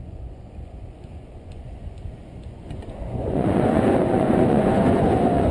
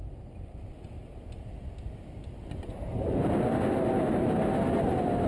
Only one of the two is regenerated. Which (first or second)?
first